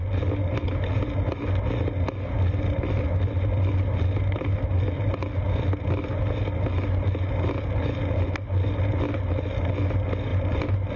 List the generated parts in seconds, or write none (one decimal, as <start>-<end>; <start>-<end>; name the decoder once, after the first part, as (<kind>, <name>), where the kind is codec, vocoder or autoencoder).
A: none